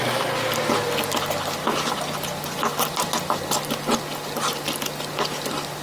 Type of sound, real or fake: real